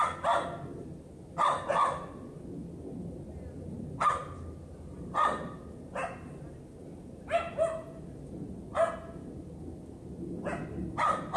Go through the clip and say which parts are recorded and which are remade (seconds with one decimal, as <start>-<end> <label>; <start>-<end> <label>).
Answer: 0.0-11.4 recorded